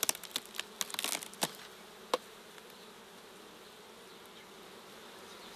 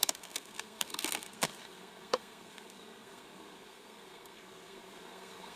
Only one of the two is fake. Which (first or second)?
second